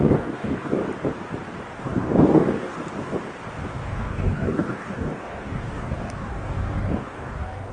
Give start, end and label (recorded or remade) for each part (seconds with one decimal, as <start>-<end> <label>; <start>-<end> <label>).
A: 0.0-0.8 remade; 0.8-1.8 recorded; 1.8-2.7 remade; 2.7-3.7 recorded; 3.7-7.7 remade